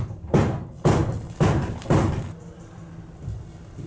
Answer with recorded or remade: recorded